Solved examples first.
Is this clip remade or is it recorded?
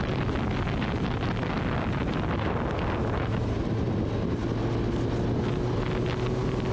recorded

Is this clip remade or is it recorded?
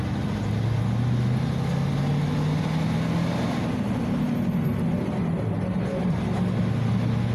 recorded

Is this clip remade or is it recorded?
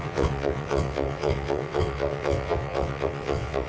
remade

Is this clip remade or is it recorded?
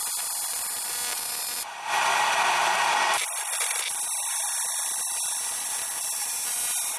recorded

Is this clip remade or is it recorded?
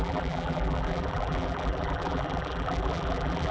remade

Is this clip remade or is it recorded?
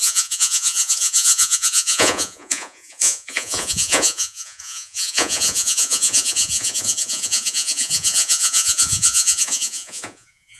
remade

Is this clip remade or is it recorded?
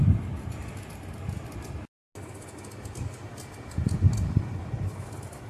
recorded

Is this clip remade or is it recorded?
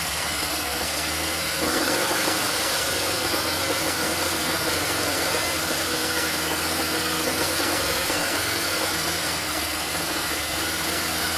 remade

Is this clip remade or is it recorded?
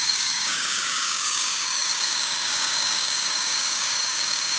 remade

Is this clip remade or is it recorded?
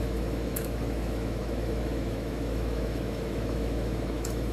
remade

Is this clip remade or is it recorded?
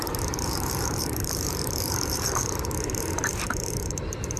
remade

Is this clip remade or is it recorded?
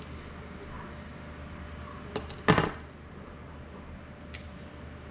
recorded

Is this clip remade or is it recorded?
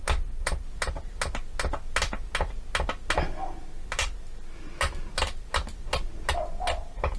recorded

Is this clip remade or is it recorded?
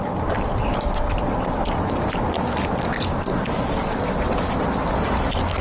recorded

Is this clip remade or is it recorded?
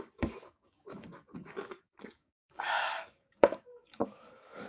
remade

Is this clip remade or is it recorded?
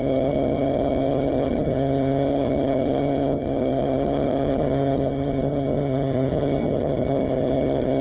remade